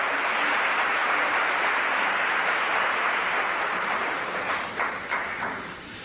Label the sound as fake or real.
fake